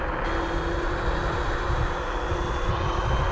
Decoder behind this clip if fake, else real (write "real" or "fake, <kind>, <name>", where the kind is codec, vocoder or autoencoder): real